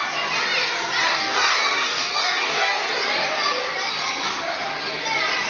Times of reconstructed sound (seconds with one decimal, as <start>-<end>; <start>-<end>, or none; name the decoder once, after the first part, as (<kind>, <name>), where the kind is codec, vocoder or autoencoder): 1.0-2.9 (codec, DAC)